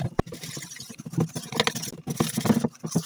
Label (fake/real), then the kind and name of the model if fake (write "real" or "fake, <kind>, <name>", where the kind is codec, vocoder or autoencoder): real